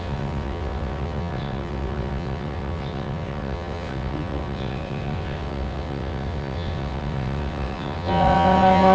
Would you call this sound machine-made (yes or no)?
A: yes